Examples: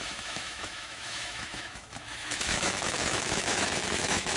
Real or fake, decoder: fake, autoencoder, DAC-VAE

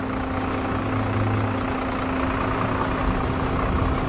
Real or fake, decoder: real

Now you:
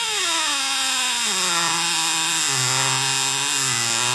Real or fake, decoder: real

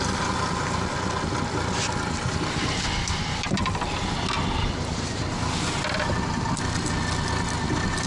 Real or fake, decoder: real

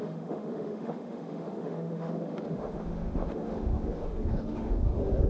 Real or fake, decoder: fake, autoencoder, DAC-VAE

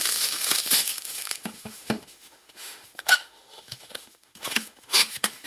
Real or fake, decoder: fake, autoencoder, DAC-VAE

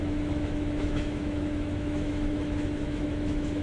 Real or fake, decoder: fake, autoencoder, DAC-VAE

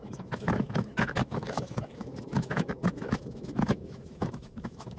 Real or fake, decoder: fake, autoencoder, DAC-VAE